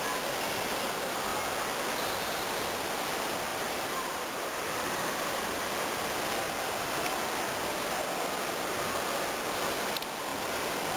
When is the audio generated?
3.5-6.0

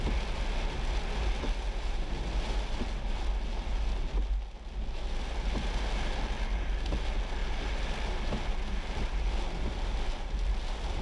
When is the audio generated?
none

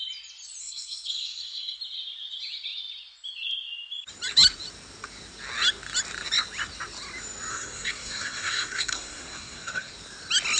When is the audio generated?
0.6-1.8; 7.5-9.9

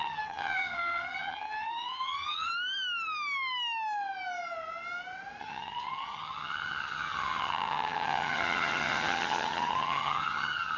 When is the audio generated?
0.0-2.5; 5.4-10.8

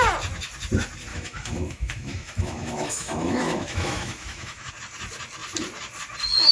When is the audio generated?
1.1-4.7